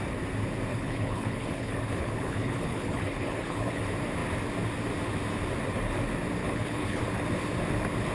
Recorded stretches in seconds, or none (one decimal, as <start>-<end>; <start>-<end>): 0.0-0.7; 3.8-6.4; 7.0-8.1